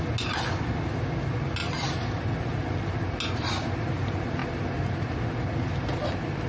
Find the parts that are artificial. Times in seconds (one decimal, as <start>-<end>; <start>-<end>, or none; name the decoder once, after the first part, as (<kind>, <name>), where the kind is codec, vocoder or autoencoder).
none